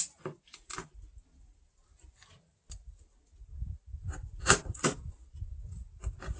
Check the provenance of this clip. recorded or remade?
recorded